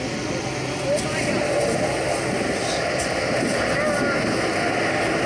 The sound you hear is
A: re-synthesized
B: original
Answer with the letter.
B